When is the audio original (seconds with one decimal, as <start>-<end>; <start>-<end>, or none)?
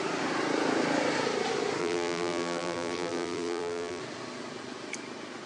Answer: 0.0-1.8; 4.0-5.5